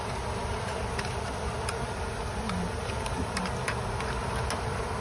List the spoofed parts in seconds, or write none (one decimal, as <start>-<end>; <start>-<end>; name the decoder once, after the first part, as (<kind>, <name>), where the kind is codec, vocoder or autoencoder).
0.4-3.4 (vocoder, BigVGAN v2)